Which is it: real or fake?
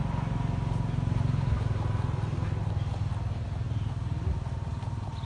real